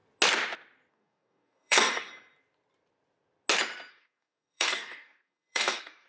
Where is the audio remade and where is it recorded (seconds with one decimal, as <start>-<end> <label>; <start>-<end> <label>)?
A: 0.0-0.9 recorded; 0.9-2.1 remade; 2.1-3.9 recorded; 3.9-6.1 remade